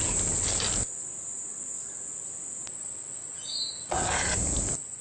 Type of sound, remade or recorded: recorded